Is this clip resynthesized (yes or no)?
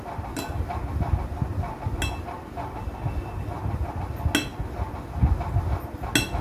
no